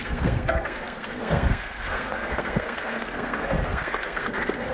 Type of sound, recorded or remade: remade